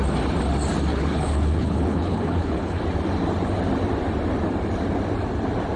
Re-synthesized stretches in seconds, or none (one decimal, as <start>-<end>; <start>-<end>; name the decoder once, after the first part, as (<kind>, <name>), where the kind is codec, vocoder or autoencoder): 0.9-2.8 (codec, HILCodec)